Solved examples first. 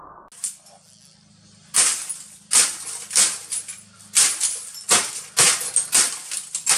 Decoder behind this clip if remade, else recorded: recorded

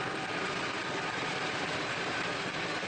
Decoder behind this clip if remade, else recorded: recorded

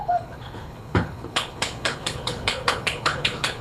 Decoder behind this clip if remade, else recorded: remade, codec, HILCodec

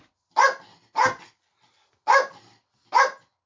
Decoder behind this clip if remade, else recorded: recorded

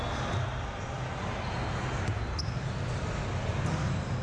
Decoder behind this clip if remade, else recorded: recorded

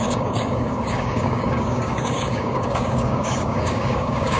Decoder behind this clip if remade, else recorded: remade, codec, DAC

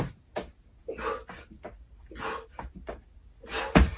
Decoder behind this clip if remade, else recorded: recorded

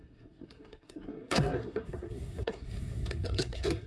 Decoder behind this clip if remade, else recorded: remade, codec, SNAC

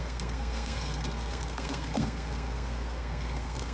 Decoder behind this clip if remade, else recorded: remade, codec, SNAC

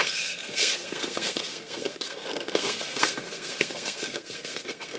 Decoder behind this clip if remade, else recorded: remade, codec, SNAC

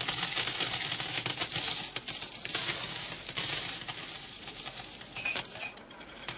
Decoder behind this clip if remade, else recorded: remade, vocoder, BigVGAN v2